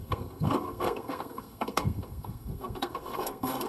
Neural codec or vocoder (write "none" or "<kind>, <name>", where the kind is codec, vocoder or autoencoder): codec, SNAC